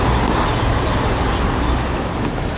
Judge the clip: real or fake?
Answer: real